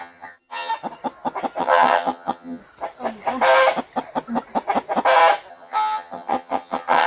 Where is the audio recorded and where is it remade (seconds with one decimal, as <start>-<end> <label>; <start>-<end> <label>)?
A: 0.0-0.7 remade; 0.7-1.6 recorded; 1.6-2.6 remade; 2.6-5.5 recorded; 5.5-7.1 remade